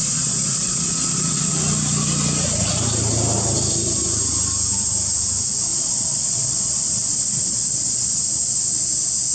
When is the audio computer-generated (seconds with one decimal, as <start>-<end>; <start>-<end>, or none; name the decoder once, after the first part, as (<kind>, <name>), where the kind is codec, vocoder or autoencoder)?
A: 0.0-1.5 (vocoder, Vocos); 5.7-8.2